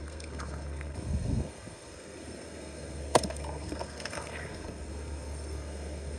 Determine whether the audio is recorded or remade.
remade